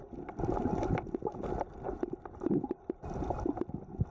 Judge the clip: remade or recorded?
recorded